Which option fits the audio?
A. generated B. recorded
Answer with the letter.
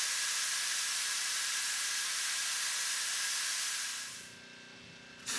B